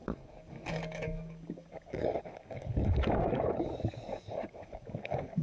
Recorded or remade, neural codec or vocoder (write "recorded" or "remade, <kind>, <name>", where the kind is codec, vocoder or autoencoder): remade, codec, DAC